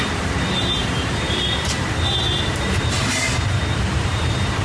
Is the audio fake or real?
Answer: fake